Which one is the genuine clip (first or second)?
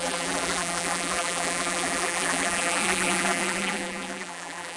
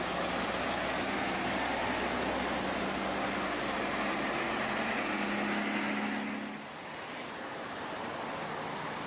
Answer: second